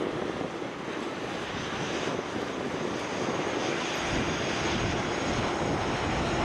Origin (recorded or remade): recorded